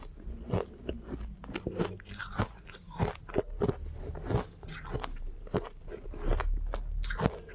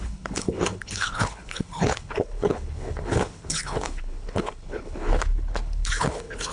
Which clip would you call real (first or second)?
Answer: first